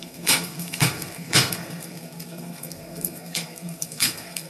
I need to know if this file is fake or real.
fake